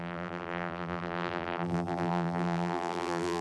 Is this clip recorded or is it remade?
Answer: remade